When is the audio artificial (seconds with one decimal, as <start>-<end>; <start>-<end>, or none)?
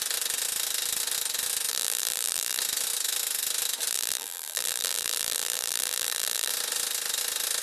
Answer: 1.7-2.6; 3.9-6.5